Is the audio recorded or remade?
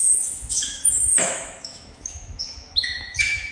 remade